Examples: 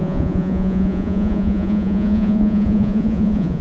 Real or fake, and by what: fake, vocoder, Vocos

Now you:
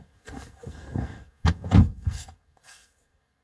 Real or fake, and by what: fake, codec, SNAC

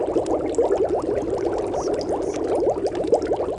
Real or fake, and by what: real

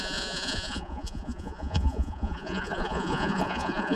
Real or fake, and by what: fake, vocoder, Vocos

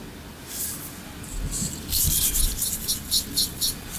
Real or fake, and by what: real